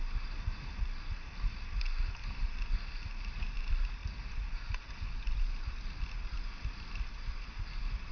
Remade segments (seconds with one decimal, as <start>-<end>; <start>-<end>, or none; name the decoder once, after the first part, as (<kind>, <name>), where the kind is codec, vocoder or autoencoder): none